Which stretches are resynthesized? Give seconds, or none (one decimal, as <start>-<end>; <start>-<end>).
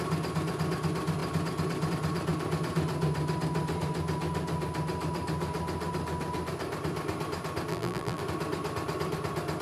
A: 7.7-8.2